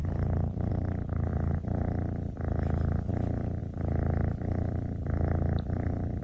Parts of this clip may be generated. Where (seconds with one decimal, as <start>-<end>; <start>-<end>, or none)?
0.0-0.7